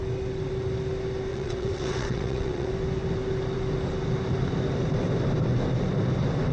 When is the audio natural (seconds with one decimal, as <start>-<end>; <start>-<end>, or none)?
0.0-1.3; 2.7-6.5